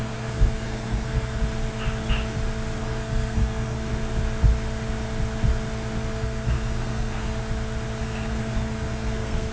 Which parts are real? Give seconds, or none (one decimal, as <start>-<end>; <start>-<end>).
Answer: 1.4-2.8; 3.9-6.1; 7.4-8.0